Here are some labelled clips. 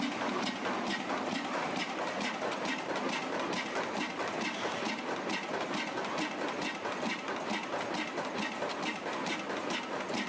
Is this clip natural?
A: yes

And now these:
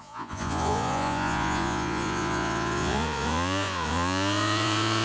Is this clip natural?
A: no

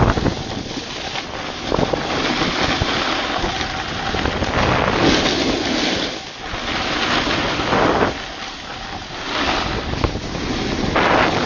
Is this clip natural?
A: yes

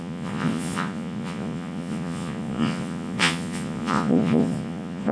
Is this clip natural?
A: no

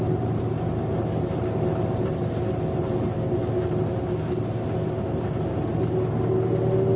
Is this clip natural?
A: yes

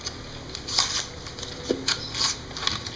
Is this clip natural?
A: yes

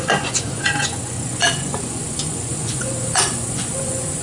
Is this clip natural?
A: no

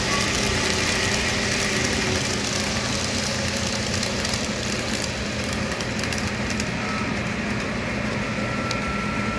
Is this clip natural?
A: yes